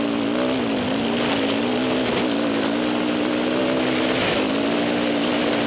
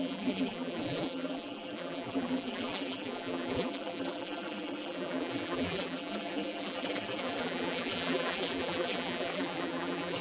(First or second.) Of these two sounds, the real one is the first